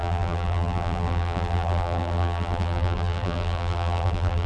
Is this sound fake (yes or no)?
yes